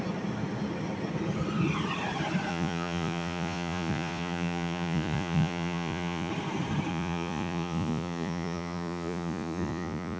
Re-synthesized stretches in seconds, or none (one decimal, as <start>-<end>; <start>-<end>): 2.5-6.3; 6.9-10.2

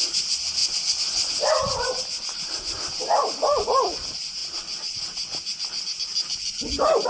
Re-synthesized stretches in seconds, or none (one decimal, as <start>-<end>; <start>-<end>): 4.4-5.0